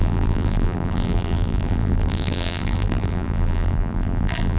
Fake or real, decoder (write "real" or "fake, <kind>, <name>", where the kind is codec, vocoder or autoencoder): fake, vocoder, BigVGAN v2